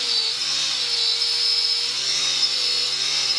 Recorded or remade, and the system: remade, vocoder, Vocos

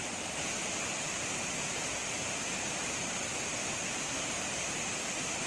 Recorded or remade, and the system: remade, vocoder, BigVGAN v2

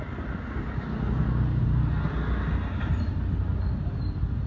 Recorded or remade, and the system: recorded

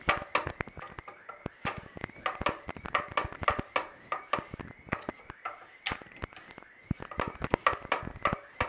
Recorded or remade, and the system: recorded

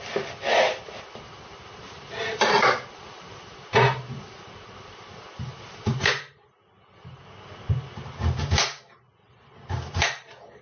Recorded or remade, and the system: recorded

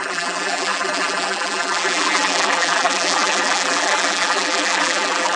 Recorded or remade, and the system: remade, vocoder, BigVGAN v2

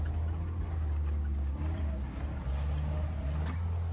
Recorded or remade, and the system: recorded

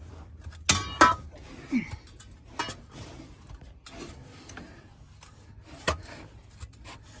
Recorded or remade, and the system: recorded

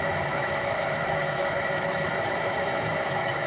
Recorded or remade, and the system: remade, autoencoder, DAC-VAE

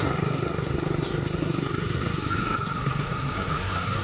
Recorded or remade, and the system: remade, codec, SNAC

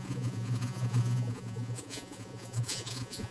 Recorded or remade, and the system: remade, vocoder, Vocos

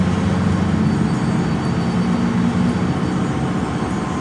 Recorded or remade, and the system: recorded